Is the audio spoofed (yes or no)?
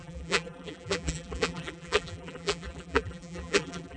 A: yes